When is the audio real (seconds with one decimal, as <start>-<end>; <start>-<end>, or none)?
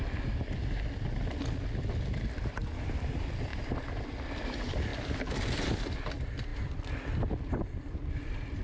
0.0-8.6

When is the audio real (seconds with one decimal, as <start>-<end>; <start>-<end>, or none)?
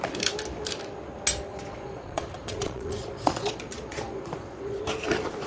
0.0-1.5; 4.8-5.5